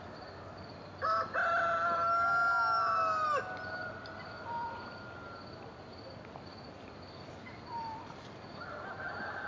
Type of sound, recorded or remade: recorded